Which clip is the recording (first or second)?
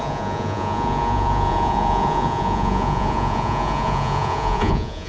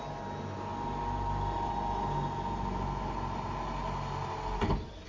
second